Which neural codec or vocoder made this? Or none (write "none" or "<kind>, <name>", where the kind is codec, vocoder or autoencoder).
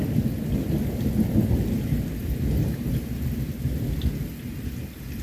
none